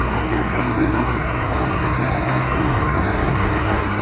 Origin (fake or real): fake